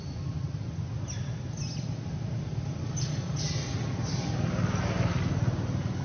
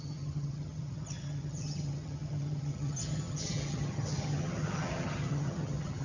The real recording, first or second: first